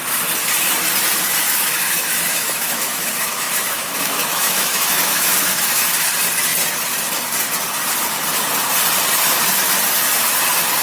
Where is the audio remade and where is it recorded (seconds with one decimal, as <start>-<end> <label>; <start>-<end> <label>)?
0.0-1.4 recorded; 1.4-6.1 remade; 6.1-10.8 recorded